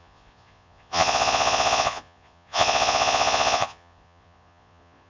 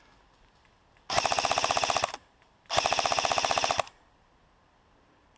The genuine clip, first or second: second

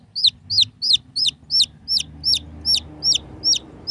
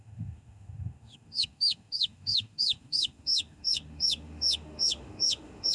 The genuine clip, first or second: first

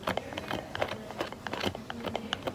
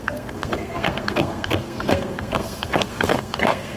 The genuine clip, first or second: first